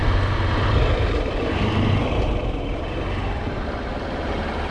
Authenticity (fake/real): fake